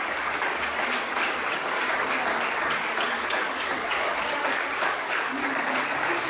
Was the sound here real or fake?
fake